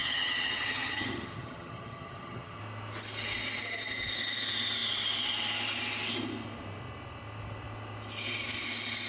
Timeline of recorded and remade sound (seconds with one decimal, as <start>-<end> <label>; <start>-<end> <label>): 0.0-2.6 remade; 2.6-9.1 recorded